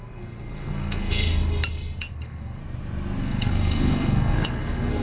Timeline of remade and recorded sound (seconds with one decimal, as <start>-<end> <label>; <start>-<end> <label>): 0.0-1.4 remade; 1.4-2.0 recorded; 2.0-2.6 remade; 2.6-3.2 recorded; 3.2-5.0 remade